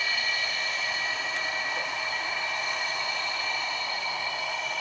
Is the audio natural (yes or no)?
yes